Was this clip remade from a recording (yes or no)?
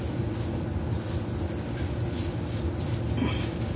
no